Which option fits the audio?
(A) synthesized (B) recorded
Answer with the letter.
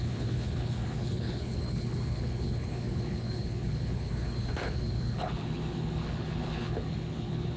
A